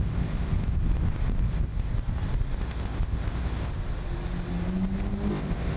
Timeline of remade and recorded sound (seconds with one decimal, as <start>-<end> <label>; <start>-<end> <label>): 0.0-0.8 remade; 0.8-1.5 recorded; 1.5-1.9 remade; 1.9-2.6 recorded; 2.6-3.7 remade; 3.7-5.3 recorded; 5.3-5.8 remade